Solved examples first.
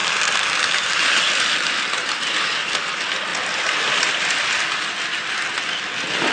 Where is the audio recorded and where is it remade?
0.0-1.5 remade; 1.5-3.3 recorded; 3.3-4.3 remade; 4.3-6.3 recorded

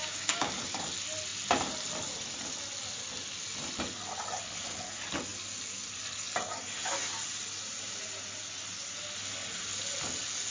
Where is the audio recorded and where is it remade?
0.0-0.5 remade; 0.5-10.5 recorded

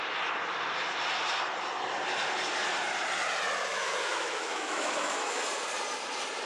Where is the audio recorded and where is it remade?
0.0-3.7 recorded; 3.7-5.4 remade; 5.4-6.5 recorded